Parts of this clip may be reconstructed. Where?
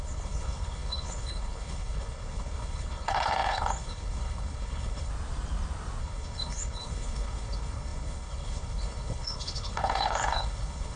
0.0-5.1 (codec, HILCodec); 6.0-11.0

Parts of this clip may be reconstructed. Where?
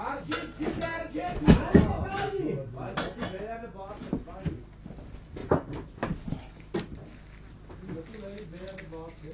5.4-6.5 (vocoder, BigVGAN v2)